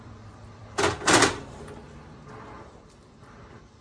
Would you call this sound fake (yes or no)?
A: yes